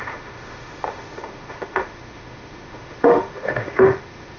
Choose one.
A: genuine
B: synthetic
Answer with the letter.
B